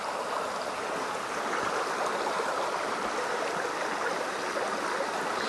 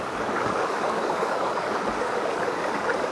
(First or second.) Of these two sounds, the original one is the first